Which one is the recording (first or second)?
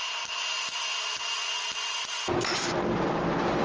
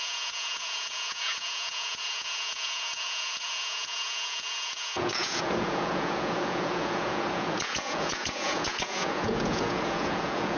first